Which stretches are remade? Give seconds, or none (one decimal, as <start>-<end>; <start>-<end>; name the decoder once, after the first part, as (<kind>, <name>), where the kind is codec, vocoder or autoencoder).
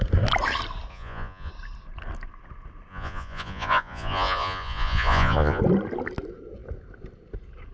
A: 0.9-1.5 (vocoder, Vocos); 2.9-5.6